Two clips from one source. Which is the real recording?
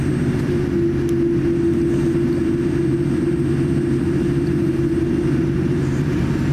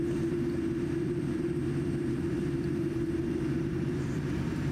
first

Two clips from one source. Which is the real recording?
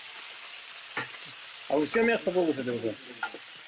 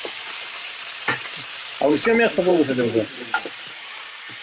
first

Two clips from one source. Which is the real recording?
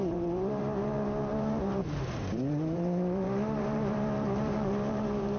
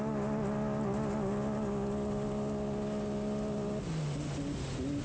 second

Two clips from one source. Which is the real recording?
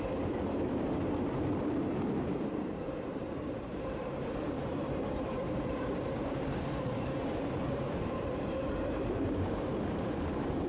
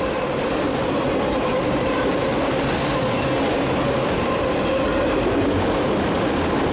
second